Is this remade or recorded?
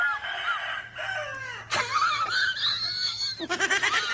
recorded